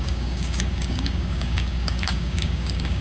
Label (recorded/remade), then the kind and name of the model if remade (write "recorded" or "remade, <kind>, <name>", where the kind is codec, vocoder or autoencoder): remade, codec, DAC